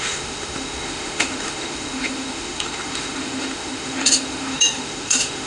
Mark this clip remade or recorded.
remade